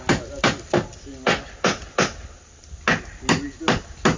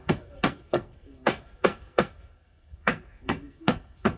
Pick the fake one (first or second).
second